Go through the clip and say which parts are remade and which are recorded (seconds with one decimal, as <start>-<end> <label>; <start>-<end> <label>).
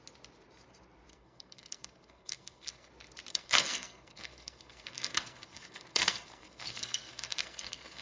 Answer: 0.0-1.1 recorded; 1.1-2.9 remade; 2.9-3.3 recorded; 3.3-8.0 remade